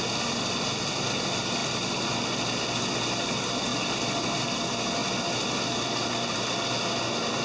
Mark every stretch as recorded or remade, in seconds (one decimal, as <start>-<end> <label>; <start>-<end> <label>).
0.0-7.4 recorded